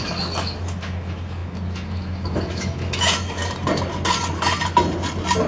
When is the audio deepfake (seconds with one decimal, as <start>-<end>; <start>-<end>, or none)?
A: 0.0-3.4

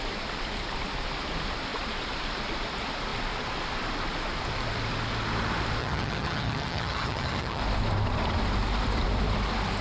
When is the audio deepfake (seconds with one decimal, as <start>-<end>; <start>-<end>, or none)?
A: 5.8-7.6